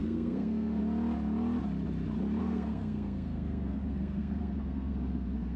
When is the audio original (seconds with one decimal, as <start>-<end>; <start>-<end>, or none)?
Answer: 0.8-2.4